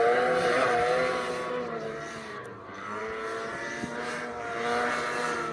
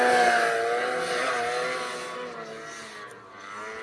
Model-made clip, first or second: first